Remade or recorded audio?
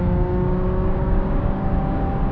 remade